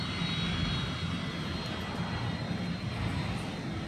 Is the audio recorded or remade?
recorded